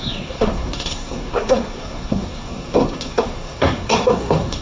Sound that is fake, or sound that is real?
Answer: fake